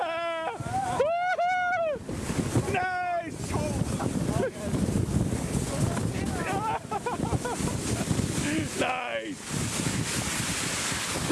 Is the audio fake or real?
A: real